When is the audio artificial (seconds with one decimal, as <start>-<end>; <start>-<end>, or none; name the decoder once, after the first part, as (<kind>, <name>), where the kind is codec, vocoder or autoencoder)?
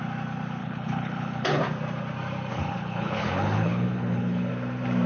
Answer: 0.6-1.6 (codec, HILCodec); 2.5-4.5